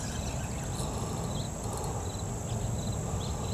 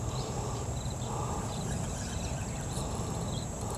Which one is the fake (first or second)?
second